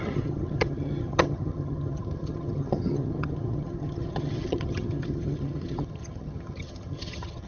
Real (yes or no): no